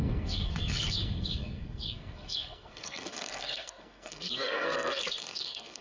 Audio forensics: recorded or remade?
remade